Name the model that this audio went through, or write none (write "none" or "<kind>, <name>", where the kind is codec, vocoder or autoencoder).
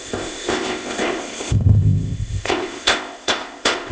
codec, ZipCodec